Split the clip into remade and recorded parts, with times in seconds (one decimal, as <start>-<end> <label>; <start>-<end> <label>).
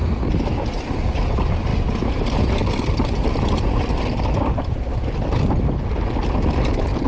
0.0-7.1 recorded